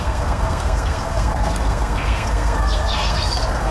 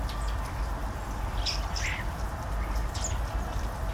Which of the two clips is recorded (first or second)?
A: second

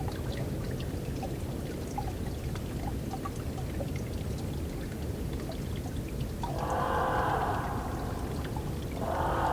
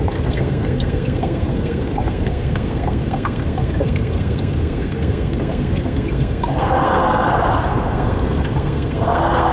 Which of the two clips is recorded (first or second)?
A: first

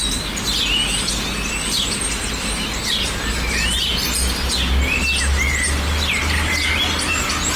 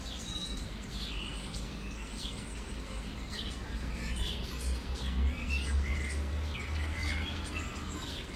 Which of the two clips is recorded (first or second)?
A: first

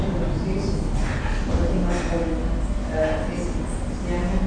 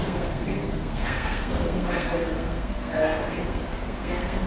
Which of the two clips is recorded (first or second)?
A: first